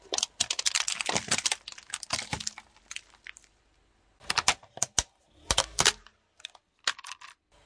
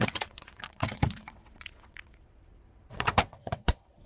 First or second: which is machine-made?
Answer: second